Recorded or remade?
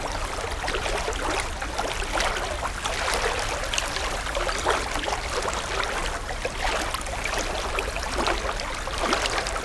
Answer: recorded